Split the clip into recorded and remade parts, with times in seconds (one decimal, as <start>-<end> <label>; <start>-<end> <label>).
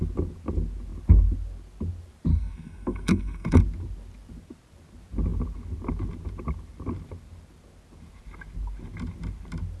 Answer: 0.0-2.3 recorded; 2.3-3.6 remade; 3.6-9.8 recorded